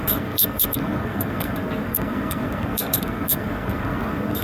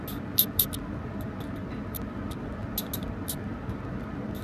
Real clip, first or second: second